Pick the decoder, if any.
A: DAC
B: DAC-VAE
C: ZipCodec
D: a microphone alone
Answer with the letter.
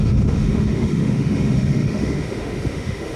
B